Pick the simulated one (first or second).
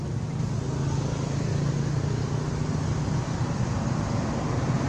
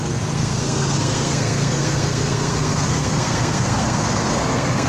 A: second